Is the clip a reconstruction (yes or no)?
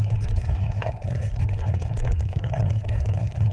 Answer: yes